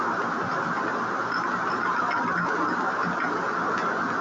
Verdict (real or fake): real